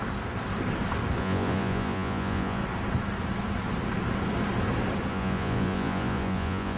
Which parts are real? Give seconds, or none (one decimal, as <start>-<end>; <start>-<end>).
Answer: 0.0-1.2; 2.6-5.1